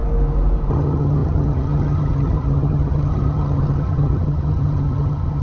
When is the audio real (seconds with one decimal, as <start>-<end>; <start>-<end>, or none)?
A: 0.0-0.7